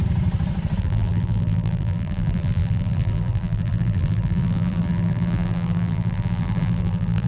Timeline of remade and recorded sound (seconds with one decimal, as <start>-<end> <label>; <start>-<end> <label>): 0.0-0.8 recorded; 0.8-7.3 remade